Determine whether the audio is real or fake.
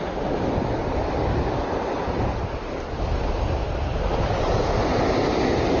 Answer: real